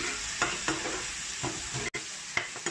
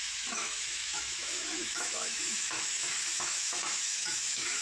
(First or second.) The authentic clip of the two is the first